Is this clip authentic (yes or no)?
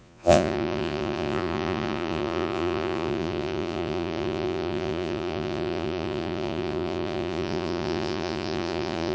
no